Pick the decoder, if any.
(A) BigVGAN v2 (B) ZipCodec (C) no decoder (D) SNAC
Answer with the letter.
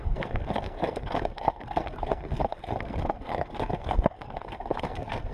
D